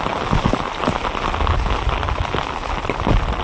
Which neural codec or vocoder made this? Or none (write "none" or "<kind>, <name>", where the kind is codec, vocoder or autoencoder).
none